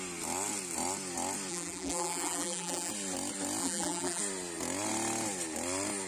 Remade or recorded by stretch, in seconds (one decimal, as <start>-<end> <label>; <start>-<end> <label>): 0.0-1.5 recorded; 1.5-2.9 remade; 2.9-3.6 recorded; 3.6-4.2 remade; 4.2-6.1 recorded